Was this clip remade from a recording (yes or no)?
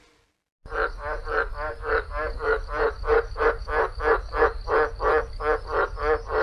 no